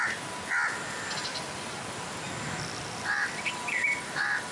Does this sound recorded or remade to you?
recorded